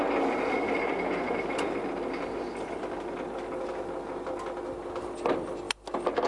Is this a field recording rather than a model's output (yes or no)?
yes